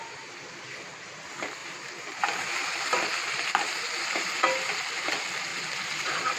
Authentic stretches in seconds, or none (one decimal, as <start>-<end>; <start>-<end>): 0.0-1.6; 5.1-5.5